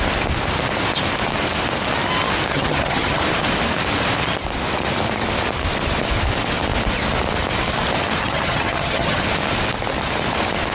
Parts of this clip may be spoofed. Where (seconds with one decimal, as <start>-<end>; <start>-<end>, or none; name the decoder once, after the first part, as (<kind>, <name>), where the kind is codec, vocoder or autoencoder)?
2.5-3.2 (vocoder, HiFi-GAN); 8.2-9.2